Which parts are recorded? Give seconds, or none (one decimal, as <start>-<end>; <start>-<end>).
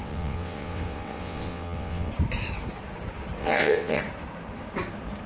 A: 2.1-3.4; 4.0-5.3